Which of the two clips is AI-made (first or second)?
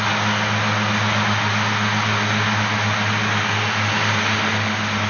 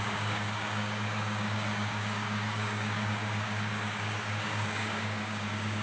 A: second